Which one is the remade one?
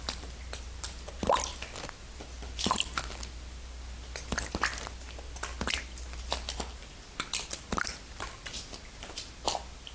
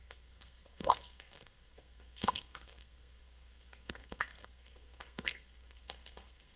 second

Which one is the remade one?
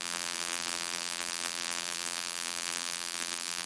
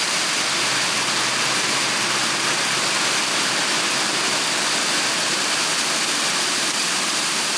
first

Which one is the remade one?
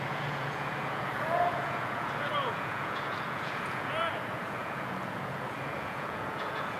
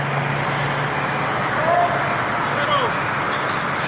first